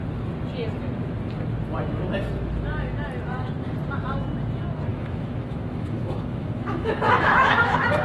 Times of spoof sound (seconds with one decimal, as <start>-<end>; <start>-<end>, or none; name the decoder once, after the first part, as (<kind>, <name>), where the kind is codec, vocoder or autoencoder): 4.9-8.0 (autoencoder, DAC-VAE)